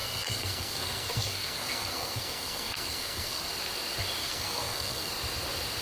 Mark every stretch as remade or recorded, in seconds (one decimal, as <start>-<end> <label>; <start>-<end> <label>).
0.0-3.5 remade; 3.5-4.2 recorded; 4.2-5.1 remade; 5.1-5.8 recorded